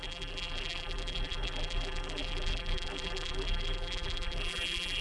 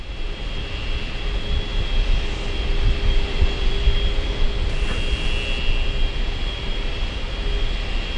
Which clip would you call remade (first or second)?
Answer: first